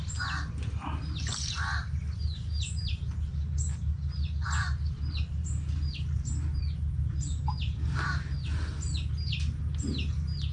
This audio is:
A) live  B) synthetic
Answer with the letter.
A